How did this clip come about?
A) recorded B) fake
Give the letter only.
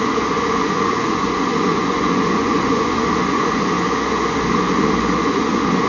B